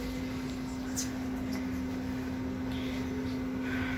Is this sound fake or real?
real